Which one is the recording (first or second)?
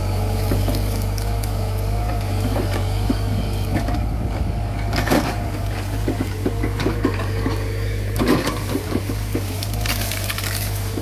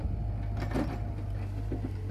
second